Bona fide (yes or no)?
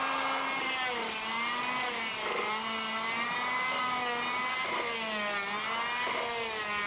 yes